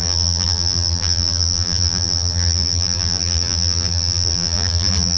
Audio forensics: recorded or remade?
remade